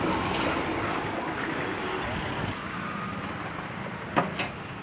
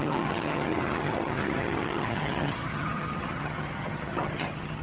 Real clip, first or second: first